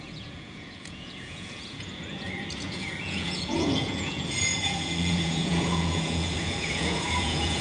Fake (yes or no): yes